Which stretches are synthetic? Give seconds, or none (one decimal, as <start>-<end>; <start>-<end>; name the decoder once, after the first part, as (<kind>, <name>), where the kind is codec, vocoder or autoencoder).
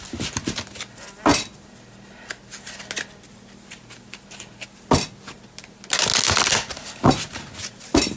none